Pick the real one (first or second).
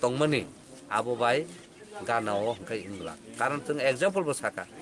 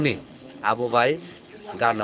first